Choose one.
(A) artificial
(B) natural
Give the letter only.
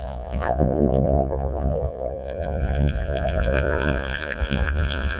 A